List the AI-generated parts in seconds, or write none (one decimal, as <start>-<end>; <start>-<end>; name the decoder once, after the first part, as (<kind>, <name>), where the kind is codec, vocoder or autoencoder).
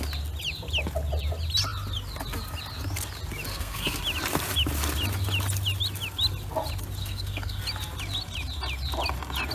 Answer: 3.5-4.0 (codec, SNAC); 7.0-7.6